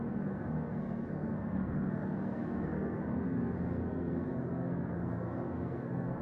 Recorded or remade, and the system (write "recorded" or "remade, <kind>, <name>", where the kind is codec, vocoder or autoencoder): remade, codec, SNAC